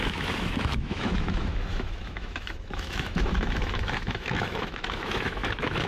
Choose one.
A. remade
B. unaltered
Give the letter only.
A